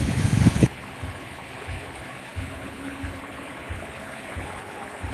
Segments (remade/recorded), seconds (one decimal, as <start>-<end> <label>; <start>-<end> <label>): 0.0-5.1 remade